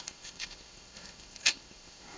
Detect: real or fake fake